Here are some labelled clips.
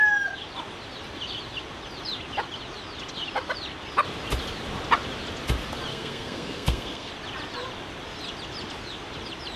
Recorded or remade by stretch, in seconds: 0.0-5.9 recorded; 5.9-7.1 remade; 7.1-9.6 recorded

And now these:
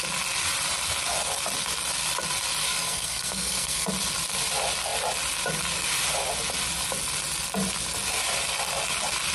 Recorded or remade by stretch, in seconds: 0.0-2.6 recorded; 2.6-3.9 remade; 3.9-9.3 recorded